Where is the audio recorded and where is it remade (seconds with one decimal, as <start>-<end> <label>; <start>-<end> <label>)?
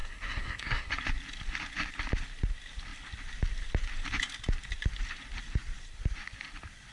0.0-0.9 remade; 0.9-6.9 recorded